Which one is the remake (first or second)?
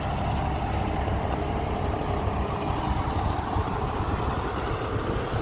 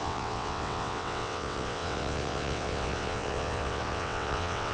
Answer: second